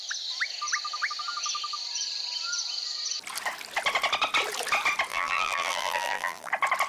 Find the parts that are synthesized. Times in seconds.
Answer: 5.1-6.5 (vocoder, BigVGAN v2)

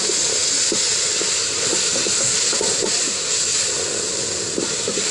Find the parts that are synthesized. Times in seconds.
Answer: 0.0-0.4 (vocoder, BigVGAN v2); 2.1-5.1

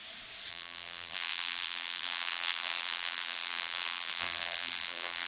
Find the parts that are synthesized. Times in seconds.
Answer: 0.5-5.3 (vocoder, BigVGAN v2)

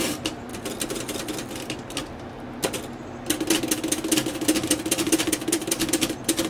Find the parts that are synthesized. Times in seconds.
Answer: 0.0-0.5 (vocoder, BigVGAN v2); 4.3-6.5

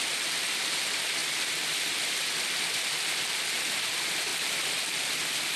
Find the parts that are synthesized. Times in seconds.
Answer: 1.2-1.9 (vocoder, BigVGAN v2); 4.3-5.1

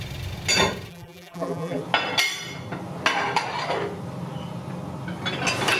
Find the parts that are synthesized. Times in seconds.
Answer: 0.9-1.8 (vocoder, BigVGAN v2)